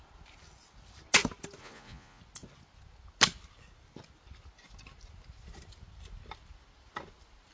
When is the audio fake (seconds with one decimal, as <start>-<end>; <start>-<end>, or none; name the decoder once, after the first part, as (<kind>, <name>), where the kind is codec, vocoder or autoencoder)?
1.6-2.2 (vocoder, Vocos)